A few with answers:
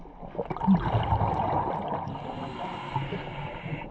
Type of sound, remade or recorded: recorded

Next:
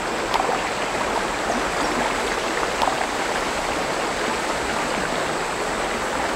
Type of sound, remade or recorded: recorded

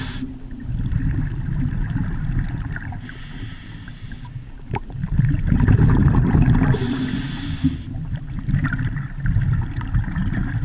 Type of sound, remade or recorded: recorded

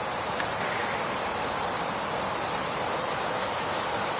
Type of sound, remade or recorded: recorded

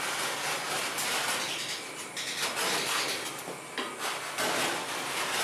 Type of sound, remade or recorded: recorded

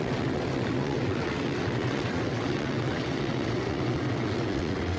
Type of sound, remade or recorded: remade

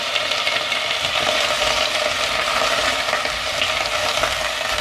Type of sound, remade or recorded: recorded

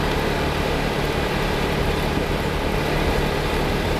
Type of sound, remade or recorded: remade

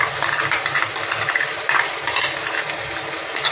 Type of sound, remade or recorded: recorded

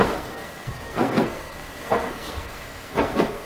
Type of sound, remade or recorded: remade